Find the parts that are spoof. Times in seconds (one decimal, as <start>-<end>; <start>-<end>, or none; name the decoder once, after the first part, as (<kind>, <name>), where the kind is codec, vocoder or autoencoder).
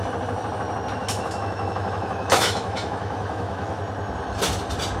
1.0-3.8 (autoencoder, DAC-VAE)